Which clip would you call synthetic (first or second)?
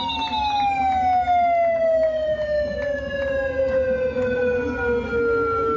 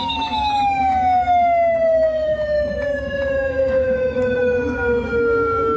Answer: second